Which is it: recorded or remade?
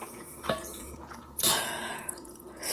remade